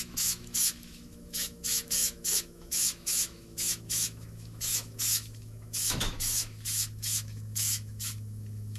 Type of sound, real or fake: fake